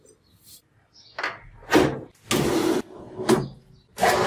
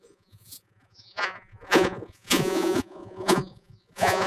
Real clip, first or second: first